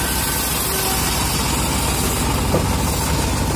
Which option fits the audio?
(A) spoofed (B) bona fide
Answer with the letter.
B